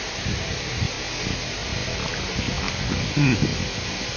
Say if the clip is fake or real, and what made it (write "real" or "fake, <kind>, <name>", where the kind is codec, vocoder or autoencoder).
real